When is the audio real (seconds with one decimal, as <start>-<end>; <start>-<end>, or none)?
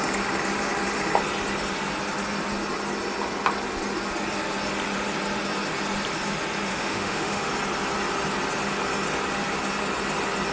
0.0-6.7; 7.5-10.5